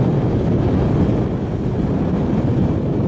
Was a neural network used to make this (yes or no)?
no